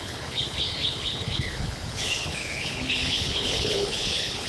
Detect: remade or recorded remade